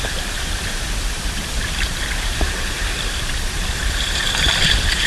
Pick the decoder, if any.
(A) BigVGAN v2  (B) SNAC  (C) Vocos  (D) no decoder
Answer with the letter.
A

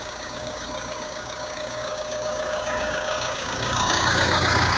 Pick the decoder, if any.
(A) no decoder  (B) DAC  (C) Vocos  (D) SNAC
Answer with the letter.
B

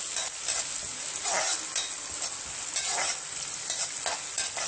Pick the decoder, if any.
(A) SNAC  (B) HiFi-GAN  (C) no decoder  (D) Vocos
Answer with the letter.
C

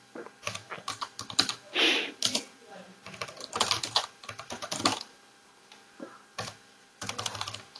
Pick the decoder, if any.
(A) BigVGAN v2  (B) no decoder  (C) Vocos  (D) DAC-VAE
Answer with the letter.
A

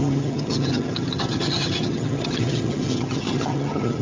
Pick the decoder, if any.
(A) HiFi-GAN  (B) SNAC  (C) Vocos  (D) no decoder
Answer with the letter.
A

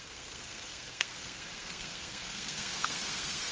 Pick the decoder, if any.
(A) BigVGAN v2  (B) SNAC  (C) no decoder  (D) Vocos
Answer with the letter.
B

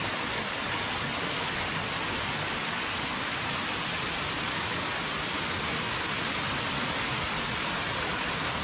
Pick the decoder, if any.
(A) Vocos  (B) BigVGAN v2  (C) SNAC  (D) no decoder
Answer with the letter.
D